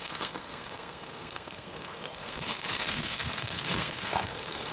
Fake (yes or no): yes